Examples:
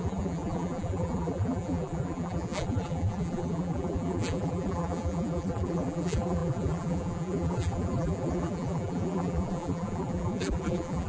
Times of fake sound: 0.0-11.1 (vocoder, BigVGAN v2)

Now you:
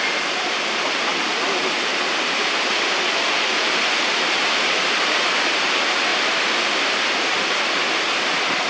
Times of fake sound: none

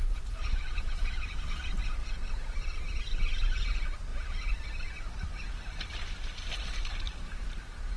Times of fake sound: 0.0-1.8 (vocoder, BigVGAN v2); 3.0-4.1

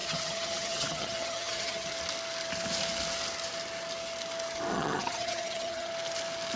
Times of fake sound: 0.0-1.9 (vocoder, HiFi-GAN); 4.7-5.9